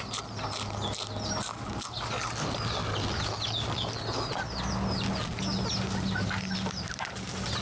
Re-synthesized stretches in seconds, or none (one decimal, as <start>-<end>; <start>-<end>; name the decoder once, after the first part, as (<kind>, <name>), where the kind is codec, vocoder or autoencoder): none